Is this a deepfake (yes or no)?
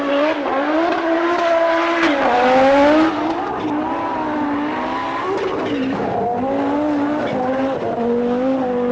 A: no